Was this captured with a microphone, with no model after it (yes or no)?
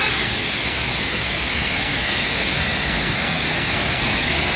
no